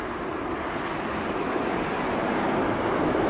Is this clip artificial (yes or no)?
no